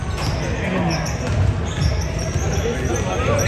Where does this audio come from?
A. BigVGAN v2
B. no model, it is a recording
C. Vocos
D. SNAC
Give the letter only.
B